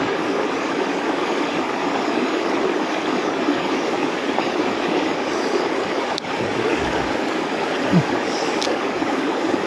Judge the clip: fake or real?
fake